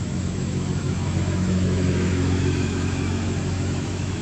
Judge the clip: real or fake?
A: fake